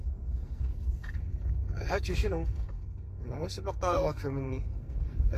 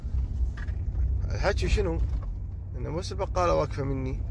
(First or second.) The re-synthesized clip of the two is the first